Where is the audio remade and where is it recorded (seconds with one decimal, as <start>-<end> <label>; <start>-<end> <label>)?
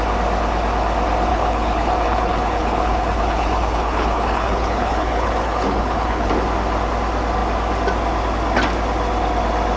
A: 0.0-1.3 recorded; 1.3-6.3 remade; 6.3-9.8 recorded